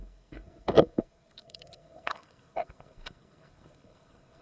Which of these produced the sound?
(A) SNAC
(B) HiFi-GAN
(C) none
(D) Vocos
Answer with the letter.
A